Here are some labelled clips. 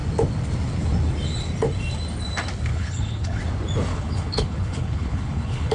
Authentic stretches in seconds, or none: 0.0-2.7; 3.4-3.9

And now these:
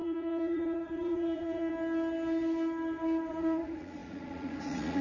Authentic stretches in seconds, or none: 1.7-3.3

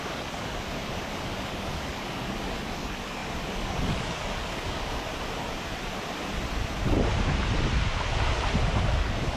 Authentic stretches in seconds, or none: 5.1-8.9

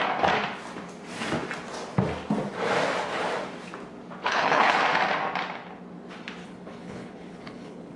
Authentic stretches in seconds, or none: 0.0-4.2; 4.8-6.4

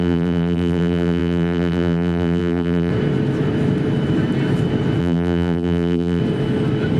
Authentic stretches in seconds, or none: 2.9-5.0; 6.2-7.0

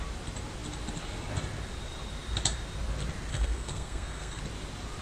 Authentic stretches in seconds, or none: 0.0-3.3; 4.4-5.0

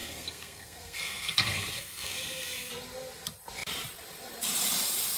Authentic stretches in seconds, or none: 2.7-5.2